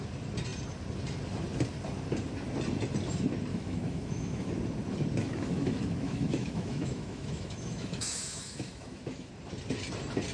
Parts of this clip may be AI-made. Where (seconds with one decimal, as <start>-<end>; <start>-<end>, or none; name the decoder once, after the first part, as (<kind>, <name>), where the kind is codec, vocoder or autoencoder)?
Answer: 3.5-4.5 (autoencoder, DAC-VAE); 5.2-9.3